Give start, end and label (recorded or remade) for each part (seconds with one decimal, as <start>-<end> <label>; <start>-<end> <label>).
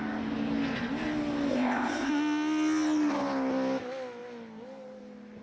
0.0-1.5 recorded; 1.5-2.1 remade; 2.1-5.4 recorded